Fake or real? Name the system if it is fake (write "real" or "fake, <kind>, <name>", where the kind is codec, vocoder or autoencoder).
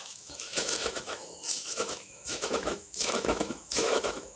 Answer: fake, autoencoder, DAC-VAE